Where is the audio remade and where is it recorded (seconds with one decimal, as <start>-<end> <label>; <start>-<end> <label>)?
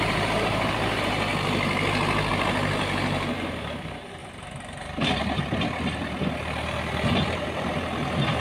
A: 0.0-1.3 remade; 1.3-2.3 recorded; 2.3-4.2 remade; 4.2-5.2 recorded; 5.2-8.4 remade